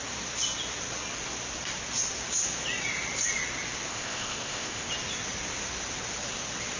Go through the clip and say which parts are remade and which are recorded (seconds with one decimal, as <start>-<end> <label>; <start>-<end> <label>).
0.0-3.9 recorded; 3.9-4.9 remade; 4.9-6.8 recorded